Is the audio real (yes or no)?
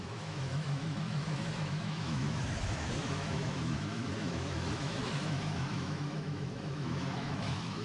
no